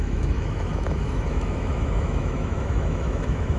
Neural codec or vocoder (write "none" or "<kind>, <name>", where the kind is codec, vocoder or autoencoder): autoencoder, DAC-VAE